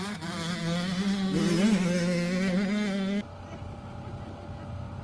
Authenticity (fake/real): real